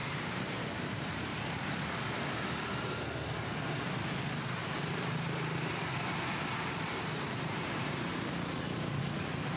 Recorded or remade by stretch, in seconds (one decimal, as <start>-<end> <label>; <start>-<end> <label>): 0.0-1.1 remade; 1.1-4.6 recorded; 4.6-9.0 remade; 9.0-9.6 recorded